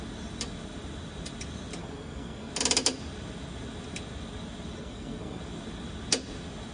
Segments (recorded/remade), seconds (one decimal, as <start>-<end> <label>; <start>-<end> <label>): 0.0-1.8 recorded; 1.8-2.5 remade; 2.5-4.8 recorded; 4.8-5.4 remade; 5.4-6.7 recorded